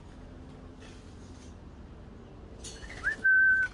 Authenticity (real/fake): real